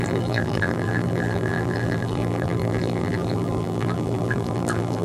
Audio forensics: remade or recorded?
remade